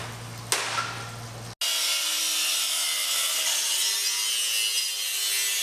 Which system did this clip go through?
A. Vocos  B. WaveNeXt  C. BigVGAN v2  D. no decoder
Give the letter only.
D